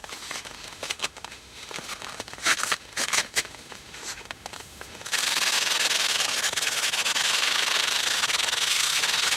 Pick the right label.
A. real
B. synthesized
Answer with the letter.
B